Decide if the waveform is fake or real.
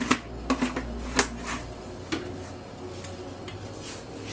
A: real